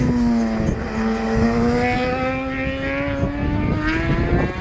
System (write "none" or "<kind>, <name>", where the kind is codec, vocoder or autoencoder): none